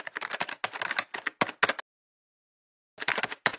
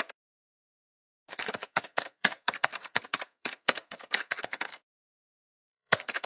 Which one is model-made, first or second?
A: second